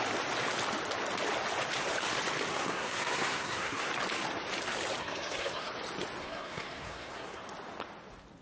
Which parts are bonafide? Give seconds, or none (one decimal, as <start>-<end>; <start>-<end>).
0.0-2.5; 3.9-5.0; 5.7-6.2; 7.4-8.4